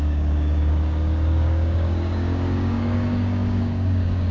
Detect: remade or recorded remade